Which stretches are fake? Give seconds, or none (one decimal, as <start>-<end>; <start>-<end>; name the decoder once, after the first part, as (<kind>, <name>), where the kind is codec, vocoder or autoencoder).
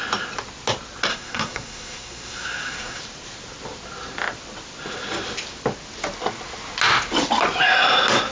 1.1-3.0 (codec, SNAC)